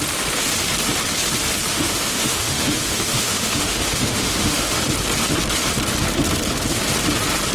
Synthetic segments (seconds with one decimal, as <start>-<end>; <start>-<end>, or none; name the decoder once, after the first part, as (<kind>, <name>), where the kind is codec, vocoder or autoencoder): 1.7-4.8 (autoencoder, DAC-VAE)

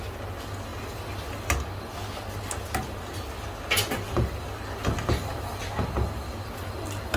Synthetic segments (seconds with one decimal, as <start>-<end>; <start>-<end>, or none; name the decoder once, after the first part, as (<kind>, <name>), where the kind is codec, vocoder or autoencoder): none

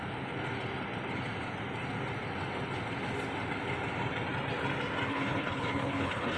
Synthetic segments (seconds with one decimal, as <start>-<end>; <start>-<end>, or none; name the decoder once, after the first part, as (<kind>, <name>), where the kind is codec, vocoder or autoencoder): 5.1-6.4 (codec, HILCodec)

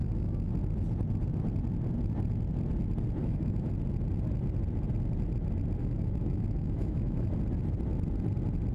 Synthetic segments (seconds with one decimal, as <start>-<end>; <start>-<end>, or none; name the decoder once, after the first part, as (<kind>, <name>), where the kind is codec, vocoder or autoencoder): 0.0-0.5 (autoencoder, DAC-VAE); 3.2-3.7; 5.8-7.3